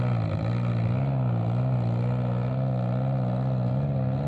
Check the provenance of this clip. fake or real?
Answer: real